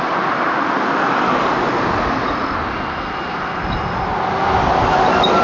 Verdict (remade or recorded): recorded